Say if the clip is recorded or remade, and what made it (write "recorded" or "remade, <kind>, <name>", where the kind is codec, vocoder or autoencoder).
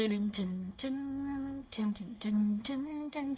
remade, codec, SNAC